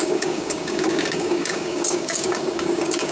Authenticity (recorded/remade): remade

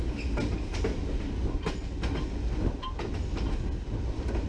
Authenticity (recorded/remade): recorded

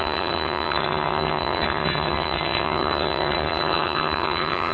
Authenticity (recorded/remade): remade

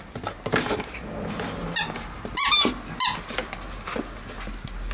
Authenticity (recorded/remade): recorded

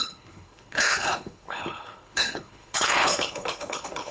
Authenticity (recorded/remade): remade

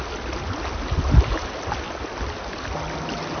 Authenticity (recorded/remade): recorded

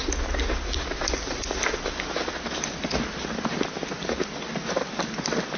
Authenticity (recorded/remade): remade